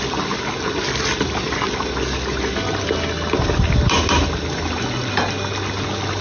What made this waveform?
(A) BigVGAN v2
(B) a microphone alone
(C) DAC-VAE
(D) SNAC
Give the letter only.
B